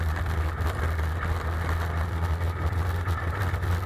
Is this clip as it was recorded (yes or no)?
yes